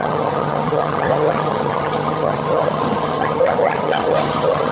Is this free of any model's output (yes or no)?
no